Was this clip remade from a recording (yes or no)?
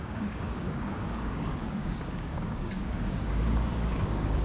yes